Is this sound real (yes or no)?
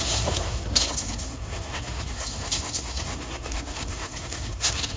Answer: no